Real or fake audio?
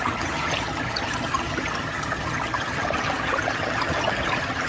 fake